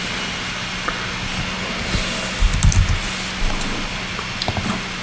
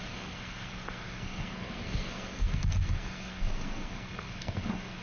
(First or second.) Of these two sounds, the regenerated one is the second